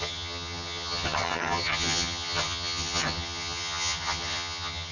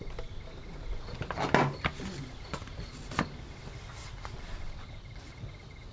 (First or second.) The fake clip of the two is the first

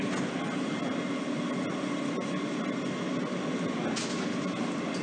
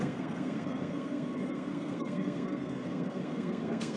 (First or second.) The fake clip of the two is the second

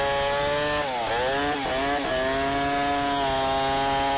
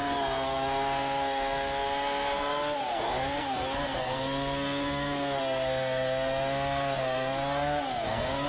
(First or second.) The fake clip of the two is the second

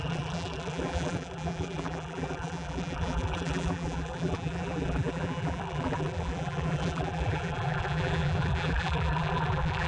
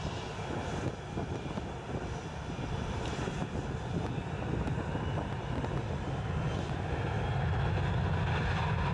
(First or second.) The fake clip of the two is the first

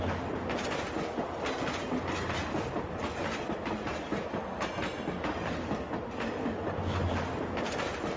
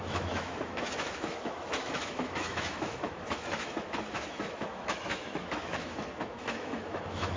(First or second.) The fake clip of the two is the second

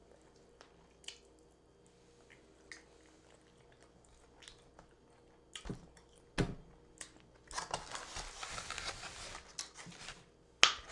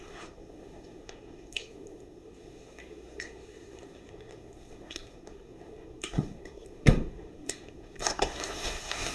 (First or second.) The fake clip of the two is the second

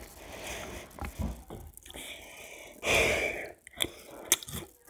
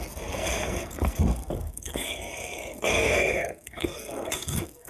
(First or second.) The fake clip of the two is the second